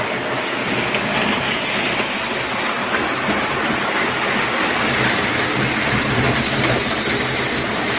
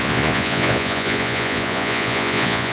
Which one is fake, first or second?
second